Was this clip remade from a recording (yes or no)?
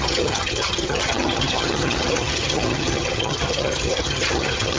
yes